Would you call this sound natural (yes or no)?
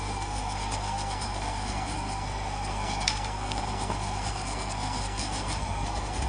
no